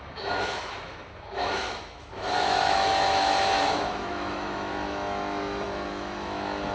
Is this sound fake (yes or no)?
yes